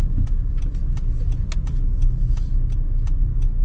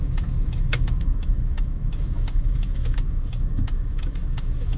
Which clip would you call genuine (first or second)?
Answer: first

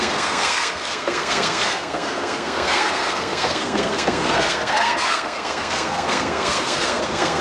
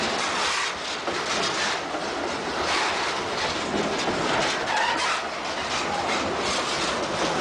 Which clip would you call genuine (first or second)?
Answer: second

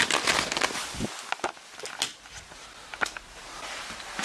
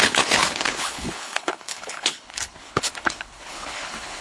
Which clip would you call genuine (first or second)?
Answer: first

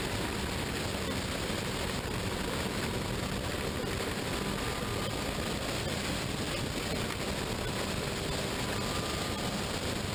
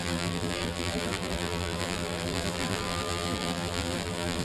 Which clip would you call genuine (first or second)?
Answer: first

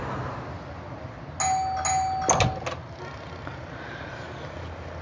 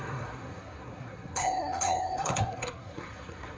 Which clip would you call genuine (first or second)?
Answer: first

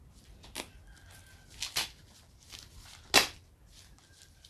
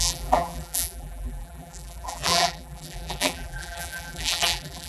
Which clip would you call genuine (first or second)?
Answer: first